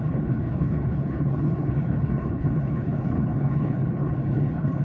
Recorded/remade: remade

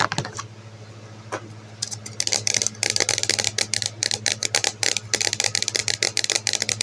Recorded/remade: recorded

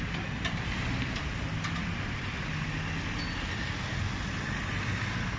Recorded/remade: recorded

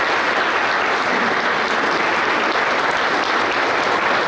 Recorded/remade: recorded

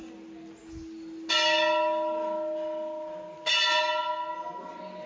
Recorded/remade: recorded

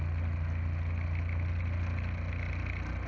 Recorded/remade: recorded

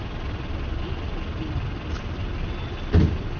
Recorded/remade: recorded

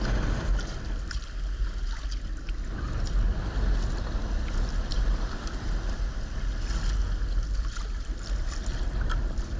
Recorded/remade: recorded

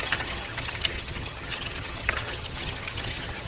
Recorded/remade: remade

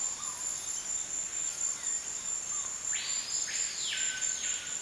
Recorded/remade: recorded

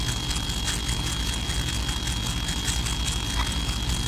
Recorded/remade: recorded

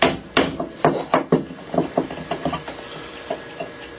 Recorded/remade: recorded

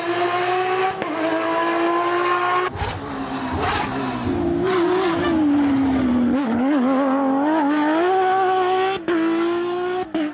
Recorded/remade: recorded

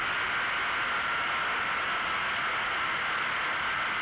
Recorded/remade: recorded